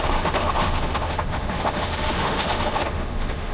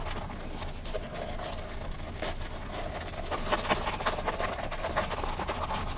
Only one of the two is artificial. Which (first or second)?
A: first